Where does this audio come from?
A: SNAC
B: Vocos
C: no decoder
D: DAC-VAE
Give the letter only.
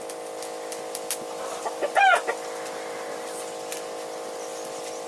C